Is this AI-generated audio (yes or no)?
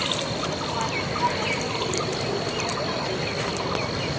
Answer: no